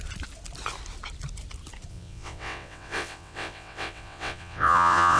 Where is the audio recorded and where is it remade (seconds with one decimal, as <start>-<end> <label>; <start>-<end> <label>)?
0.0-1.9 recorded; 1.9-5.2 remade